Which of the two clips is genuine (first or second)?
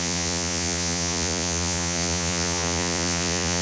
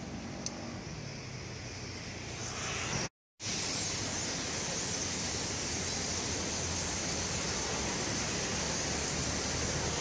second